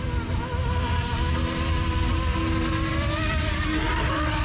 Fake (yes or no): no